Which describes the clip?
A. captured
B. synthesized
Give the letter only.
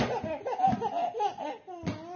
A